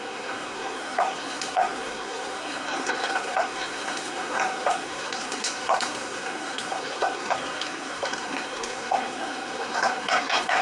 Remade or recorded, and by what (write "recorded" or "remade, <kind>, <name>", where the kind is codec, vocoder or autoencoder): remade, codec, SNAC